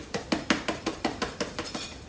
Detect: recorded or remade recorded